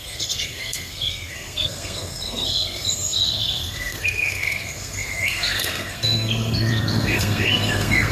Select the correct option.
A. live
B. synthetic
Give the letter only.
B